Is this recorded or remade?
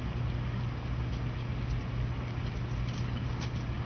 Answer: recorded